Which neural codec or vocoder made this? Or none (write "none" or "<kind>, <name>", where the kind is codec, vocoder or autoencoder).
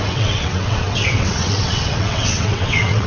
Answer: vocoder, WaveNeXt